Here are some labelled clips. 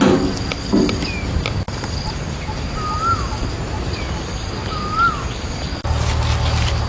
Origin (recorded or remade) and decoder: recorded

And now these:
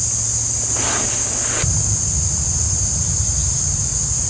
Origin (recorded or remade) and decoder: recorded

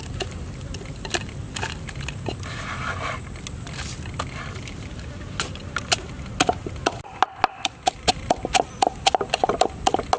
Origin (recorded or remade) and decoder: recorded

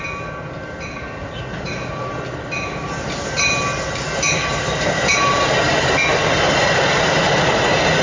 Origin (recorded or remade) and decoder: recorded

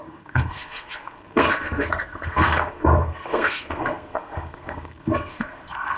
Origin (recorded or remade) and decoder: remade, codec, SNAC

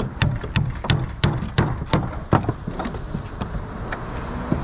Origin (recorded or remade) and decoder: recorded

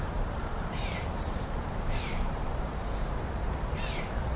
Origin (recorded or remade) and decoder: remade, vocoder, BigVGAN v2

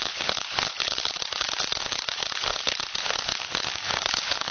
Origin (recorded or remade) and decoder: remade, codec, HILCodec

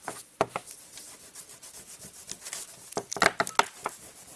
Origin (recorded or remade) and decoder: recorded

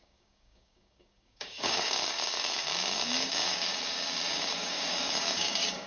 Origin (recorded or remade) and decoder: remade, codec, DAC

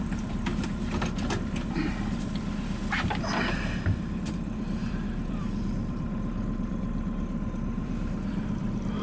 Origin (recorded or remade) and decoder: remade, vocoder, BigVGAN v2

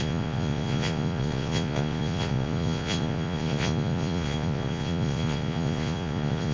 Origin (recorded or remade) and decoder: remade, vocoder, Vocos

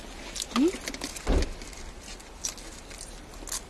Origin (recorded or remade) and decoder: recorded